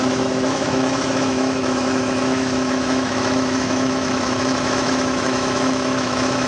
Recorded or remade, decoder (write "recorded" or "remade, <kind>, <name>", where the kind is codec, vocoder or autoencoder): remade, autoencoder, DAC-VAE